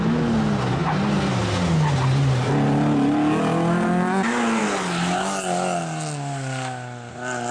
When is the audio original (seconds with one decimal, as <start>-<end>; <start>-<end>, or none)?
0.0-7.5